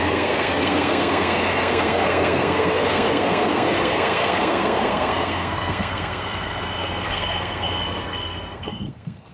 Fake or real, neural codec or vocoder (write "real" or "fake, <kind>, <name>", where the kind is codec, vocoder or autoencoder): fake, codec, SNAC